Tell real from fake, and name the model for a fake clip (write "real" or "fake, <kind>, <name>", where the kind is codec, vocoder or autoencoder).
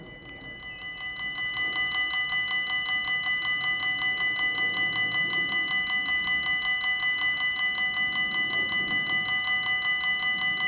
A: real